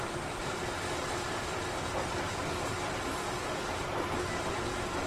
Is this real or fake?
real